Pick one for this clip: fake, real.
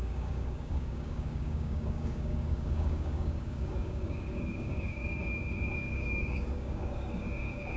fake